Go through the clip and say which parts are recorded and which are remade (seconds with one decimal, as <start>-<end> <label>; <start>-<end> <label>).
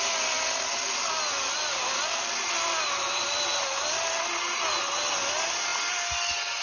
0.0-6.6 recorded